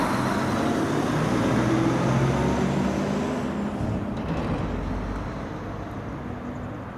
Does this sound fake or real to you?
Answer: real